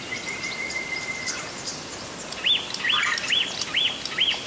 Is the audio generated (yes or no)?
no